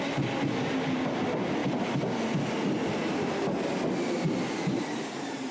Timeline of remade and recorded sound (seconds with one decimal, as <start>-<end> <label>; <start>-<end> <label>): 0.0-5.5 recorded